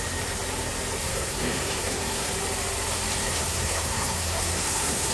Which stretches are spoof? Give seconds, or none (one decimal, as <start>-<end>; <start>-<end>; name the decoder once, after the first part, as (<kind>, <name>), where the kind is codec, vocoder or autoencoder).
1.0-2.3 (codec, SNAC); 3.2-5.1

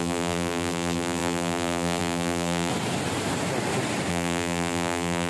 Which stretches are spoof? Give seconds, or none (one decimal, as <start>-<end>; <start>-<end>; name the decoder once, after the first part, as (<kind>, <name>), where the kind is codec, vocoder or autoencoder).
0.0-2.7 (vocoder, BigVGAN v2); 4.1-5.3

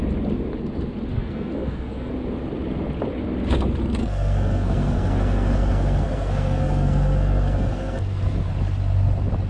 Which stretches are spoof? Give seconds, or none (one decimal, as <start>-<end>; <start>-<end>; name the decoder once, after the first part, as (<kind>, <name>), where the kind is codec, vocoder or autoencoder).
1.1-2.1 (codec, SNAC); 4.0-8.5

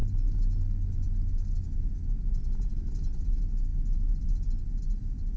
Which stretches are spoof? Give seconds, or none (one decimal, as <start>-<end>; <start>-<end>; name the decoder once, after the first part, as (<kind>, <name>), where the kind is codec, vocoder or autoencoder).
none

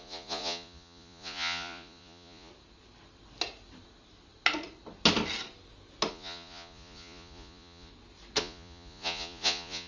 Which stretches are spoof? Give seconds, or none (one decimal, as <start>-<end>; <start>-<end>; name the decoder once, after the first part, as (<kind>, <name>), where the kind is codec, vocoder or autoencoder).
0.0-2.5 (vocoder, Vocos); 6.1-7.9; 8.4-9.9

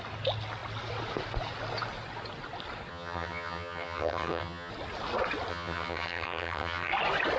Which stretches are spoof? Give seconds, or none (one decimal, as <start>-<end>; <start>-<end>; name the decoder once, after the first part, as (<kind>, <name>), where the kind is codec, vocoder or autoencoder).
2.9-4.7 (vocoder, HiFi-GAN); 5.5-6.9

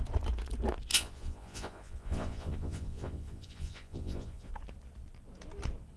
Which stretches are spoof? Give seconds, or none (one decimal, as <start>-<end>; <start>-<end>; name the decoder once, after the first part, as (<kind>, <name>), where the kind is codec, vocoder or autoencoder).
0.9-4.5 (vocoder, Vocos)

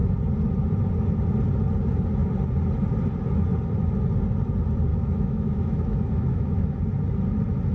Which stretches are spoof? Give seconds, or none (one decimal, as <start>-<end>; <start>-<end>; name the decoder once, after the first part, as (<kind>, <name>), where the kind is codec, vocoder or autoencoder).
4.9-6.8 (autoencoder, DAC-VAE)